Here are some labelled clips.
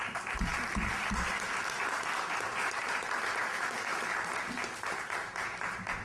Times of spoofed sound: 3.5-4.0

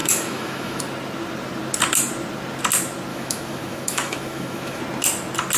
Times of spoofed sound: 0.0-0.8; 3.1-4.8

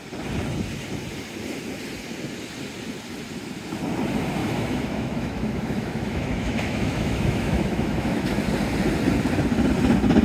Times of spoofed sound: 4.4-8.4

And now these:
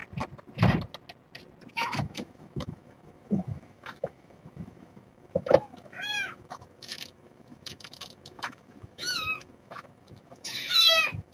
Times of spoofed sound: 1.7-11.3

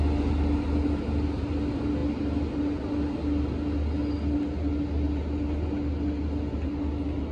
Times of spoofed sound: none

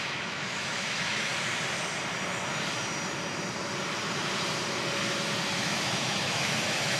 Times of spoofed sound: 0.0-1.3; 5.5-7.0

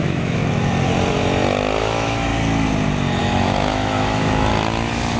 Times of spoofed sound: 0.0-0.4; 1.8-2.3; 3.2-4.5

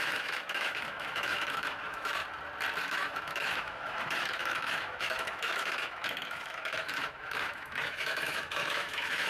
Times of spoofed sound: 0.0-2.2; 2.8-9.3